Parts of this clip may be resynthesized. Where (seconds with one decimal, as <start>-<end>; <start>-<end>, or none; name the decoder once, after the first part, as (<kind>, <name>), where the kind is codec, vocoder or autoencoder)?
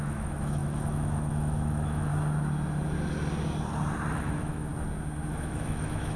0.0-2.1 (autoencoder, DAC-VAE); 4.1-4.7; 5.3-6.2